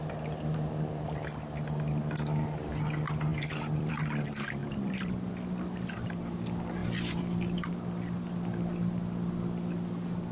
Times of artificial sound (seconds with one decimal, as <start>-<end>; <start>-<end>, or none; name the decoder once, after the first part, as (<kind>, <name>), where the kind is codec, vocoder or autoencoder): 3.3-3.9 (vocoder, BigVGAN v2); 4.6-5.3; 6.8-7.7